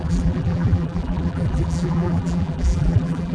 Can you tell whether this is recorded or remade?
remade